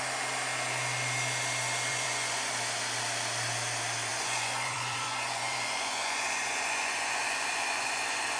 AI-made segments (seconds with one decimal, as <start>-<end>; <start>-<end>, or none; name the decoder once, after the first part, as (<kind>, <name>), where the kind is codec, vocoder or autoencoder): 1.9-2.5 (vocoder, Vocos); 4.1-8.4